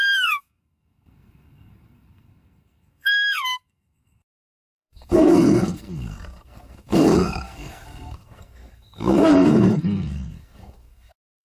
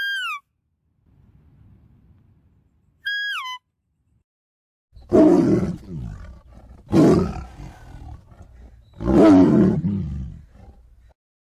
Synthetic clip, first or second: first